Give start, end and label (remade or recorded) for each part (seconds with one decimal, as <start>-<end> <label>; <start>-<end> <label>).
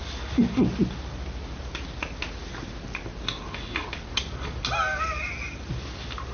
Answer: 0.0-6.3 recorded